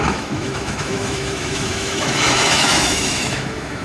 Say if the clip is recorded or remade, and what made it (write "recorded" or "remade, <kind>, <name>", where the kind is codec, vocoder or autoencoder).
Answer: remade, autoencoder, DAC-VAE